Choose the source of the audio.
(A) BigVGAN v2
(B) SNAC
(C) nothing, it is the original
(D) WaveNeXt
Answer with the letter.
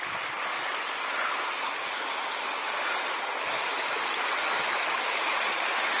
C